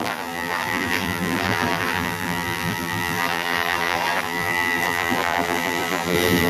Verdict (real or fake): fake